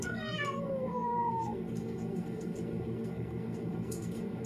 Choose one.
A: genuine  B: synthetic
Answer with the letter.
B